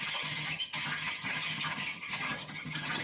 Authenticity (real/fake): fake